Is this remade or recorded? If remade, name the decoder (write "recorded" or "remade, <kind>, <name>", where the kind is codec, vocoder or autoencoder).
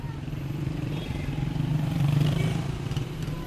remade, vocoder, BigVGAN v2